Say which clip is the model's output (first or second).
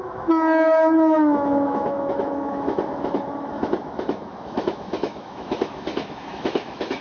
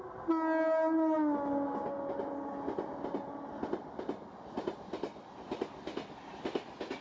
first